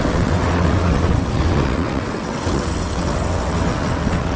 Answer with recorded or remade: remade